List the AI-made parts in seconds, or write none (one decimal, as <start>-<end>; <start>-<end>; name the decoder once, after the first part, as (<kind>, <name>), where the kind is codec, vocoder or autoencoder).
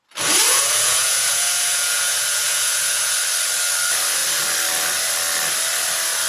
0.5-3.1 (vocoder, Vocos)